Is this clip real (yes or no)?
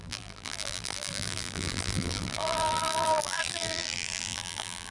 no